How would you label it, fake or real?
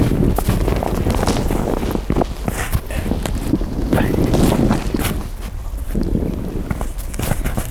real